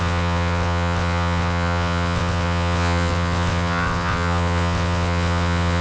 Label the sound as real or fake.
fake